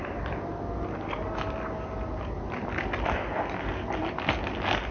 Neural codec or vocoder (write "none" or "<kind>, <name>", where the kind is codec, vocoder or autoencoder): none